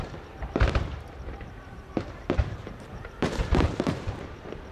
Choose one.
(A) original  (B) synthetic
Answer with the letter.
B